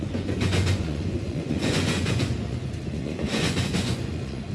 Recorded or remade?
remade